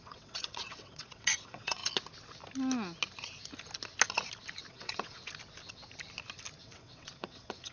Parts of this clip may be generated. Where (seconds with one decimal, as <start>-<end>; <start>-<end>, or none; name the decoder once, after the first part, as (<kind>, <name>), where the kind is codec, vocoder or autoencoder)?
0.0-1.8 (vocoder, WaveNeXt); 4.7-5.2; 6.6-7.7